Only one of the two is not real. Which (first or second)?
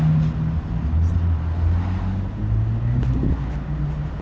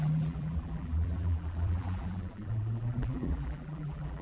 second